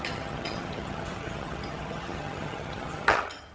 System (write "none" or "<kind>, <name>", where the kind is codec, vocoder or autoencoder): vocoder, HiFi-GAN